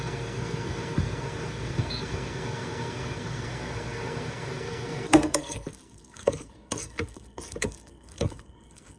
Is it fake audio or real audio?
fake